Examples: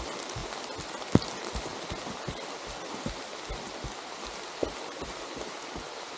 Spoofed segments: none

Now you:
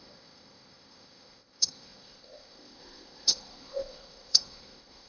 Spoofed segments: 0.0-5.1 (codec, ZipCodec)

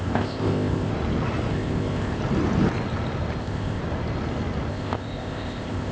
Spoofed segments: 0.0-0.9 (codec, ZipCodec); 1.5-2.2; 3.4-3.8; 4.7-5.9

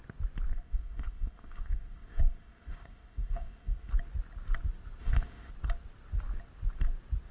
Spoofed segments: 0.5-3.9 (codec, ZipCodec); 5.0-5.5